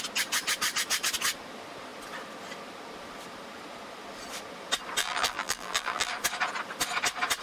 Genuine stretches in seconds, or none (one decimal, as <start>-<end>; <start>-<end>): 0.0-5.0; 6.1-7.4